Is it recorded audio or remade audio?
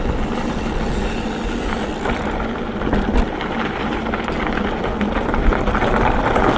recorded